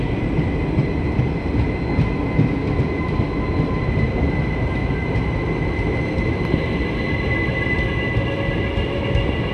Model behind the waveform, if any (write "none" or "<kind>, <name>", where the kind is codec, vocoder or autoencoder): none